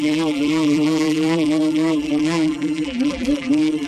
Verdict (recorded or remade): remade